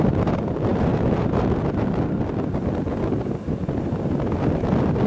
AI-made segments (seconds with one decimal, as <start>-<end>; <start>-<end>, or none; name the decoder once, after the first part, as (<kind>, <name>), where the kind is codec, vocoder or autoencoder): none